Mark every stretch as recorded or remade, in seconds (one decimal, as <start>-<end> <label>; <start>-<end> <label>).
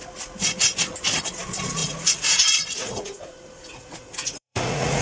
0.0-1.8 recorded; 1.8-5.0 remade